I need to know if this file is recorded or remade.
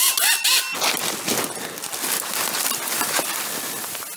recorded